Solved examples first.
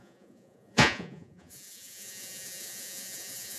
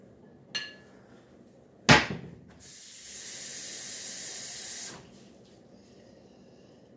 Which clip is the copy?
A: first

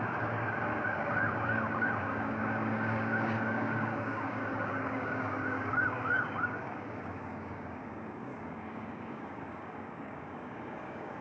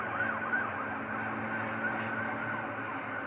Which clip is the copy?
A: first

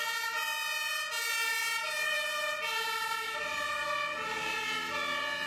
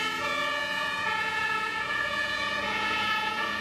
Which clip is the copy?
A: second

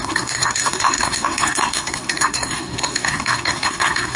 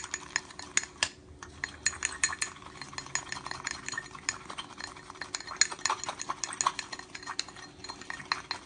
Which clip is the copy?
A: first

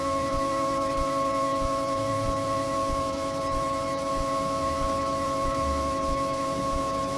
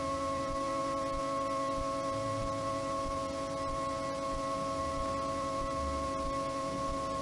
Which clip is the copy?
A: first